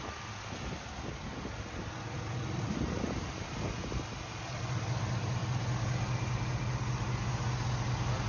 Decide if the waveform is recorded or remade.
recorded